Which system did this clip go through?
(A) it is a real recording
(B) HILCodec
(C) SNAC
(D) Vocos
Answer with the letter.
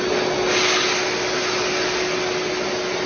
A